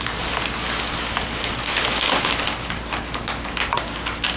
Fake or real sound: real